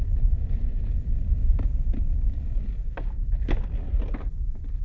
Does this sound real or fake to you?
real